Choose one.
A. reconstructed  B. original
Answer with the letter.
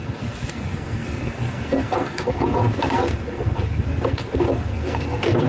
A